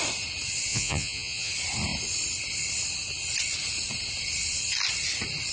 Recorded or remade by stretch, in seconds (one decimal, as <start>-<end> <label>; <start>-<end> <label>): 0.0-0.7 recorded; 0.7-1.5 remade; 1.5-5.5 recorded